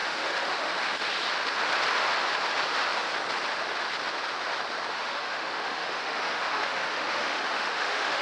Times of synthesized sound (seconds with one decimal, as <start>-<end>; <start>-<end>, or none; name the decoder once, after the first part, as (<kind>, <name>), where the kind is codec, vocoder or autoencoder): 0.0-0.7 (autoencoder, DAC-VAE); 4.9-8.2